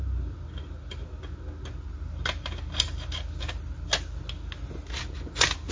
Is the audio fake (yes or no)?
no